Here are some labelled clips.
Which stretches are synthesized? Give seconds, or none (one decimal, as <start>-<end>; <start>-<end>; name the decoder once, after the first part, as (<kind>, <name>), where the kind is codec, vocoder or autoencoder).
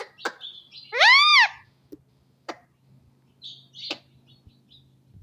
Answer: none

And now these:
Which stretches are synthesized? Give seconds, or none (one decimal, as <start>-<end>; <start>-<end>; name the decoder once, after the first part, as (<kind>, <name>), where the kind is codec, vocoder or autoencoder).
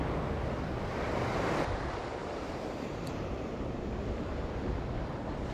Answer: 2.2-5.5 (vocoder, BigVGAN v2)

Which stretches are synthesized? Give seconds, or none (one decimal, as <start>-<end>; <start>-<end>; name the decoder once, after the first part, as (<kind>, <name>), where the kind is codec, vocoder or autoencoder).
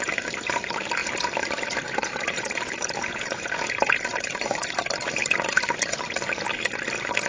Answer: 0.0-1.0 (vocoder, BigVGAN v2); 1.6-5.2